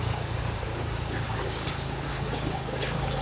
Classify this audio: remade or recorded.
remade